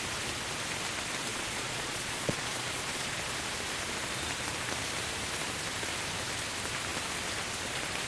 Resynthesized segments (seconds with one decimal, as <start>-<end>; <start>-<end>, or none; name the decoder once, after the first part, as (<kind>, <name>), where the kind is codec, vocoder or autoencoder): 1.3-3.1 (vocoder, Vocos)